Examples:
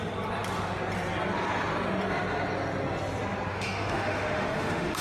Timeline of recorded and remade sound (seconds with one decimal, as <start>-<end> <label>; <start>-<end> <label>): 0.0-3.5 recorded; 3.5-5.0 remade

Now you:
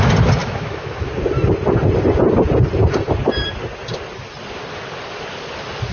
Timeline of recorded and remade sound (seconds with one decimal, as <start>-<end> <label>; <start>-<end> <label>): 0.0-0.4 recorded; 0.4-1.1 remade; 1.1-5.9 recorded

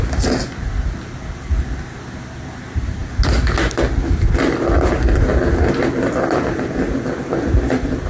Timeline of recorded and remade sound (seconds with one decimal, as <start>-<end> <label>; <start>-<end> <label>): 0.0-8.1 recorded

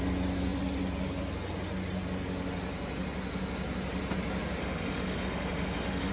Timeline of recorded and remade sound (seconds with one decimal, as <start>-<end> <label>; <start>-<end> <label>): 0.0-4.6 recorded; 4.6-6.1 remade

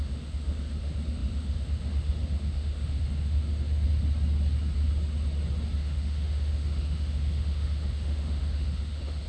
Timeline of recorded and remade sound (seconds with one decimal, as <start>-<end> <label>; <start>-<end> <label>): 0.0-3.9 remade; 3.9-5.8 recorded; 5.8-9.3 remade

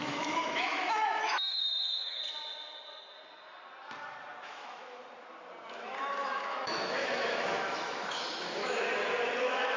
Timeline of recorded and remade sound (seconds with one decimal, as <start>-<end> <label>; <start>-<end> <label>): 0.0-2.2 remade; 2.2-4.4 recorded; 4.4-5.0 remade; 5.0-6.0 recorded; 6.0-8.9 remade; 8.9-9.4 recorded; 9.4-9.8 remade

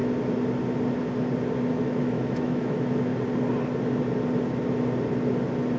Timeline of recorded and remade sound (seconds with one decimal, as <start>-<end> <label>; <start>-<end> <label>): 0.0-1.7 recorded; 1.7-3.1 remade; 3.1-5.8 recorded

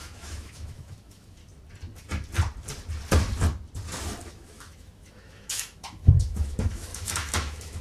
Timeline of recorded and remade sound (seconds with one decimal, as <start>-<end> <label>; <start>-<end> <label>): 0.0-1.4 remade; 1.4-4.2 recorded; 4.2-7.8 remade